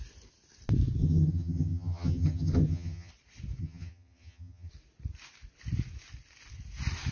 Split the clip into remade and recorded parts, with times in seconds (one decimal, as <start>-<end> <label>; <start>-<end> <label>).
0.0-1.0 recorded; 1.0-3.1 remade; 3.1-3.6 recorded; 3.6-4.7 remade; 4.7-7.1 recorded